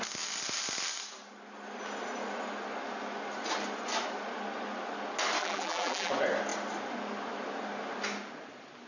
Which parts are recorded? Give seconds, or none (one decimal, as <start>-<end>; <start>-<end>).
0.0-5.4; 6.1-8.9